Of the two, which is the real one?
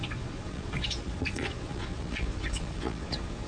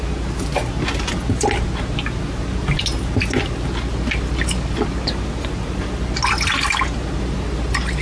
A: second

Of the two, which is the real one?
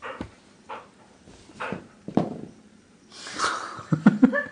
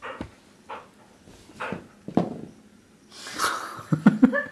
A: second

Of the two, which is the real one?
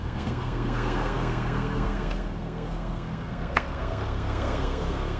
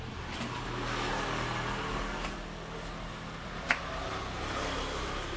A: second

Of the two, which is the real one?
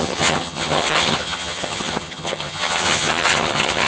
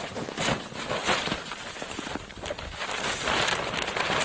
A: second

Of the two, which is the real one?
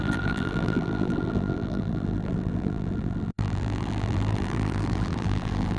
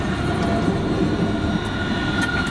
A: second